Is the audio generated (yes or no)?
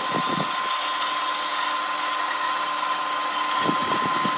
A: no